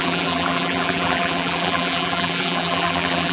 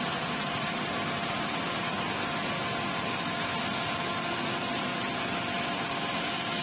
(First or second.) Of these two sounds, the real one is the second